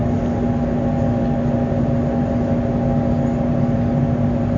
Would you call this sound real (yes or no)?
yes